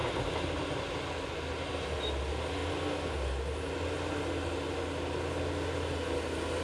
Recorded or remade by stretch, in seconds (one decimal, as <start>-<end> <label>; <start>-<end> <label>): 0.0-6.6 recorded